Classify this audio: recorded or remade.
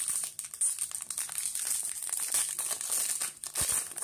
recorded